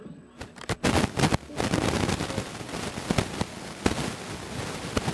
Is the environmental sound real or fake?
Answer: real